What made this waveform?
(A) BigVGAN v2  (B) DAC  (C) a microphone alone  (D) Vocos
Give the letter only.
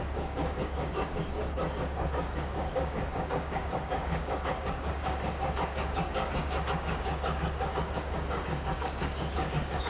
B